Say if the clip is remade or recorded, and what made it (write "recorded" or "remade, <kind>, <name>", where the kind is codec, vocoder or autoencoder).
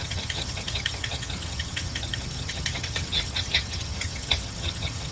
remade, vocoder, HiFi-GAN